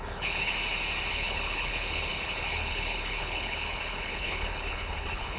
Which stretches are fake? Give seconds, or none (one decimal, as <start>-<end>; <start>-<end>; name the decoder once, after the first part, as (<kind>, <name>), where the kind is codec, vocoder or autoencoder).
0.0-0.5 (codec, HILCodec); 1.1-5.4